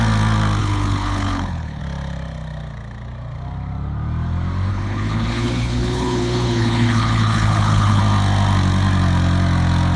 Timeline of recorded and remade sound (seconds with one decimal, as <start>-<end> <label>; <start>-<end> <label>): 0.0-0.6 recorded; 0.6-1.8 remade; 1.8-4.7 recorded; 4.7-8.0 remade; 8.0-10.0 recorded